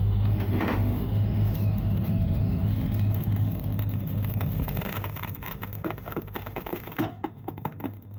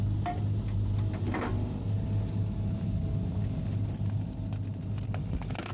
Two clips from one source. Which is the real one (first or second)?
second